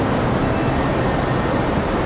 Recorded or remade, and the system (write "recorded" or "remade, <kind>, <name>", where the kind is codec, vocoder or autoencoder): remade, vocoder, BigVGAN v2